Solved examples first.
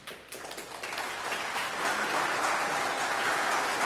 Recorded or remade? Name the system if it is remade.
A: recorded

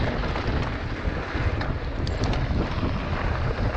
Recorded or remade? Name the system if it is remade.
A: recorded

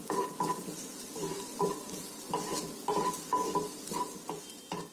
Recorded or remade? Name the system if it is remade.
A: recorded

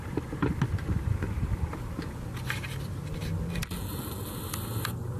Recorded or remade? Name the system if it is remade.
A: recorded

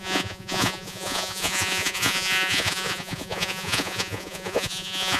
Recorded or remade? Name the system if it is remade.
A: remade, vocoder, Vocos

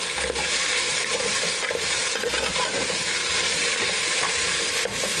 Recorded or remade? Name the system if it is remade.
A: remade, vocoder, BigVGAN v2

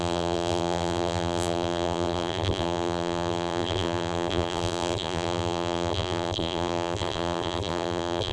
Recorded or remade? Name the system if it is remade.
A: remade, vocoder, BigVGAN v2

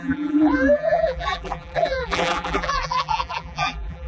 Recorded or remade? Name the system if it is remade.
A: remade, vocoder, BigVGAN v2